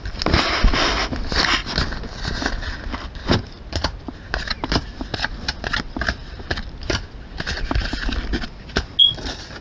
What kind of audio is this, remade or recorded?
recorded